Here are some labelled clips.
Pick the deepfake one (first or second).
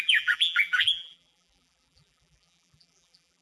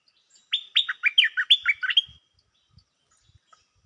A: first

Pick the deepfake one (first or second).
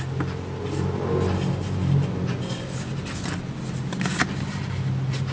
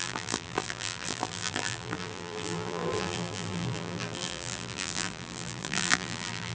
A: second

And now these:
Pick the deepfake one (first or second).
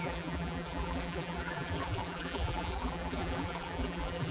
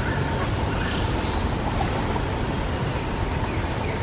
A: first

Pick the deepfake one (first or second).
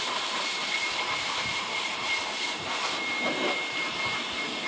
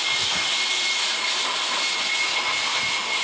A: first